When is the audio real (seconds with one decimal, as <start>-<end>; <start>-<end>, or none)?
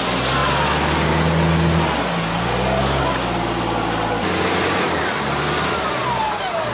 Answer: 0.0-6.7